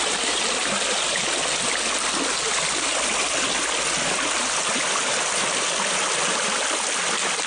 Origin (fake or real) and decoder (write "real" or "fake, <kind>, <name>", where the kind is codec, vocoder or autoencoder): real